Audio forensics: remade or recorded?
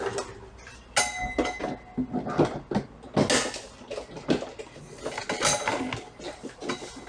recorded